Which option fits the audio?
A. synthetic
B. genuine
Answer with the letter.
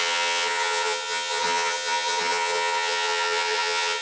A